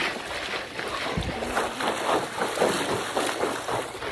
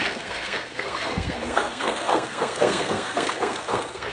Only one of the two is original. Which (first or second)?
first